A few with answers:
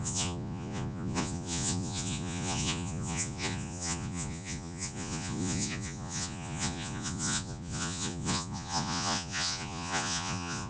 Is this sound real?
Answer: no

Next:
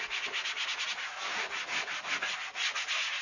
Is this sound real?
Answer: yes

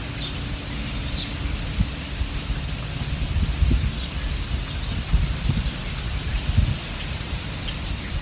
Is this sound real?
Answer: yes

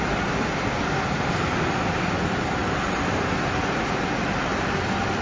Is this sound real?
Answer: yes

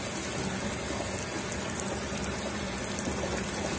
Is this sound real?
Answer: yes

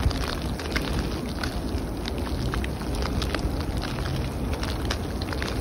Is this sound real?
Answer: yes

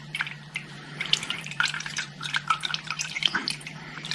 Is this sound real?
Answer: no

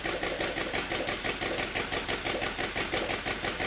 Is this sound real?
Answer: yes